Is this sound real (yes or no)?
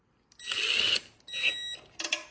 yes